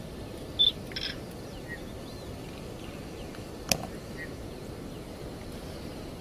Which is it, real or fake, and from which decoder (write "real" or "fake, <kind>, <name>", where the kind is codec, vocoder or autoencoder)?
real